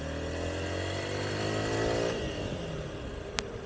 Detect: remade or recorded recorded